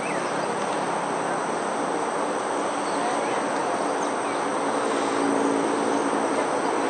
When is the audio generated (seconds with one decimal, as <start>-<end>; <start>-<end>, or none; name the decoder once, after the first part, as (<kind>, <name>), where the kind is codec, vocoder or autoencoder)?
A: none